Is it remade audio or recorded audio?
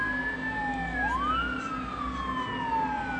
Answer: recorded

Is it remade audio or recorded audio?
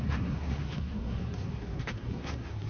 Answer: remade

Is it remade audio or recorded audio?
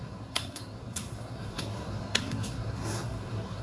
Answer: remade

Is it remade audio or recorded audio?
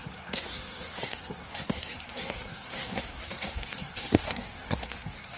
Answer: remade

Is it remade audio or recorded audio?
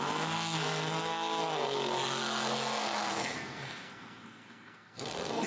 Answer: remade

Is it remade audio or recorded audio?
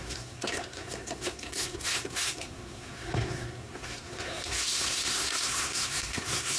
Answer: remade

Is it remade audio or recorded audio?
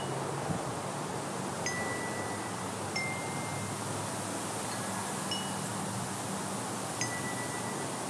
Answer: recorded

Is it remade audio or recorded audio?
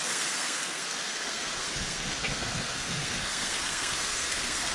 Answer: remade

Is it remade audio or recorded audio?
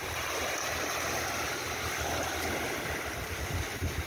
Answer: recorded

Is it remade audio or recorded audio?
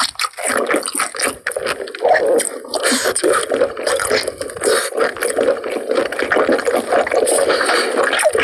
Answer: recorded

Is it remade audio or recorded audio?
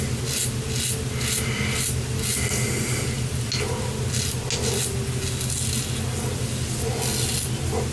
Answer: recorded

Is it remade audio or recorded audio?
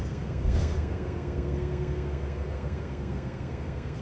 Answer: remade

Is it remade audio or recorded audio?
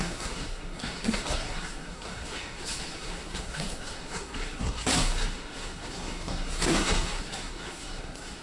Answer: remade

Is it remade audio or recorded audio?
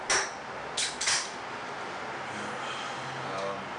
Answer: recorded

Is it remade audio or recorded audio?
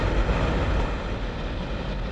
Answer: recorded